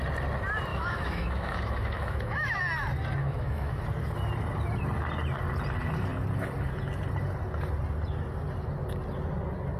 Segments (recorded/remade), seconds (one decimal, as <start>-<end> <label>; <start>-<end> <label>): 0.0-0.7 recorded; 0.7-2.6 remade; 2.6-3.2 recorded; 3.2-3.8 remade; 3.8-9.8 recorded